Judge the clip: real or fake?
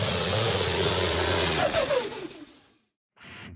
fake